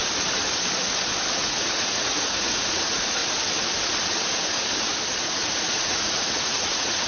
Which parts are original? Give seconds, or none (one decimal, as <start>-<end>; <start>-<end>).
0.0-1.3; 3.2-5.2